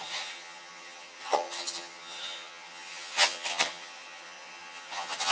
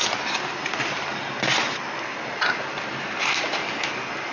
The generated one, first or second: first